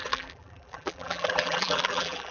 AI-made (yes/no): yes